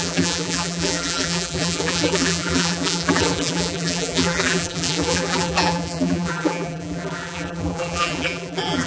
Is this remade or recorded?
remade